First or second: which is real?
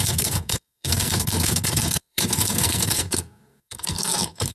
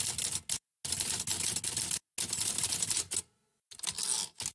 second